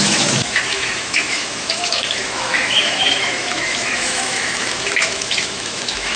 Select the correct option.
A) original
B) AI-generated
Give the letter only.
B